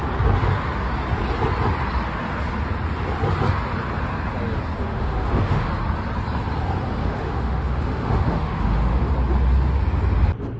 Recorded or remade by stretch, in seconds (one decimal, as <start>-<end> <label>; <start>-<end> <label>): 0.0-4.8 recorded; 4.8-5.7 remade; 5.7-7.0 recorded; 7.0-9.1 remade; 9.1-10.6 recorded